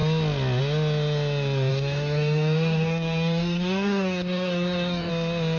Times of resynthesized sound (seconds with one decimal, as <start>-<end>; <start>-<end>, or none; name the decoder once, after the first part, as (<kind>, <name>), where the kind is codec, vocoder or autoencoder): 1.7-5.1 (codec, DAC)